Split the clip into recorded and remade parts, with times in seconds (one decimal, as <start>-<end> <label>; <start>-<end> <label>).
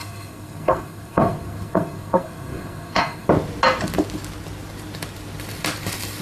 0.0-3.3 remade; 3.3-6.2 recorded